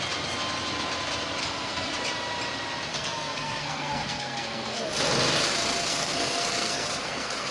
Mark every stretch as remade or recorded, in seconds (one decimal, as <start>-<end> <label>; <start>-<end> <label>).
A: 0.0-1.4 recorded; 1.4-1.9 remade; 1.9-2.9 recorded; 2.9-4.9 remade; 4.9-5.9 recorded; 5.9-7.5 remade